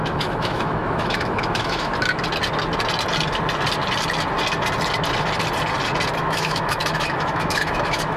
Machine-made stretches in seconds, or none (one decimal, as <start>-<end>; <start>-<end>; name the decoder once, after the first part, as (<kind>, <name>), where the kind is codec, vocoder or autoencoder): 0.0-1.9 (autoencoder, DAC-VAE); 6.2-8.2